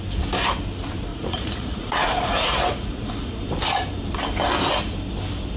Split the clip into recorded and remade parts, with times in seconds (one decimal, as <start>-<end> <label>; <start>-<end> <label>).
0.0-1.1 recorded; 1.1-3.4 remade; 3.4-5.6 recorded

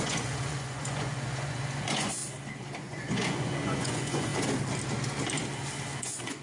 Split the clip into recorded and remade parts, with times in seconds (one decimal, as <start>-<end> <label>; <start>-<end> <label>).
0.0-2.2 remade; 2.2-2.8 recorded; 2.8-4.3 remade; 4.3-6.0 recorded; 6.0-6.4 remade

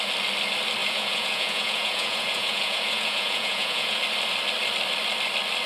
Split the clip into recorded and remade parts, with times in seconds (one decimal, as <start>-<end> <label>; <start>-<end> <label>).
0.0-0.8 recorded; 0.8-4.0 remade; 4.0-5.7 recorded

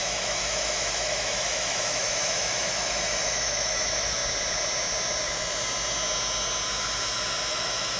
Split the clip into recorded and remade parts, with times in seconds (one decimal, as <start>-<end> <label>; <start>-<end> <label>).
0.0-4.2 remade; 4.2-7.5 recorded; 7.5-8.0 remade

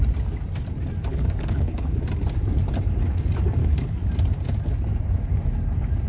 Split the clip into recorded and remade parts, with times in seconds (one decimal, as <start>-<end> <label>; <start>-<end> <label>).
0.0-1.1 recorded; 1.1-2.0 remade; 2.0-3.6 recorded; 3.6-4.1 remade; 4.1-6.1 recorded